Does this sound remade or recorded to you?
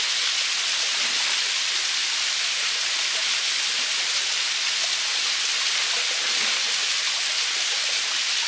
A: recorded